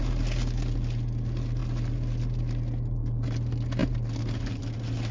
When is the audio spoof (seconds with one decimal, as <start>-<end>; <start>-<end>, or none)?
none